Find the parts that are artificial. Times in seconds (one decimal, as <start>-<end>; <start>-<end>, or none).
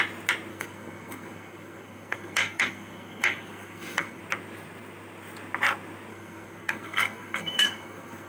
0.5-4.2; 6.1-8.3